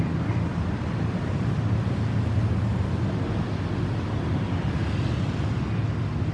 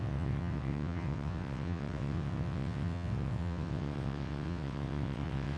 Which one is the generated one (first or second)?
second